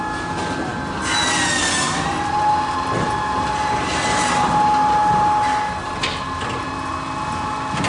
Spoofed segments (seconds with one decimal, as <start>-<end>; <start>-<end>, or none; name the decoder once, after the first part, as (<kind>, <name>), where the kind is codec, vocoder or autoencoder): none